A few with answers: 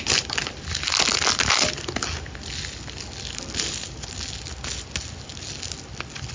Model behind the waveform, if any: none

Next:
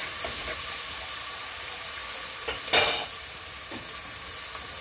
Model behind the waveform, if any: none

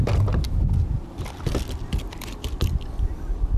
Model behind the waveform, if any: none